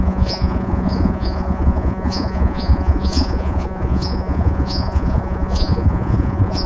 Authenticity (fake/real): fake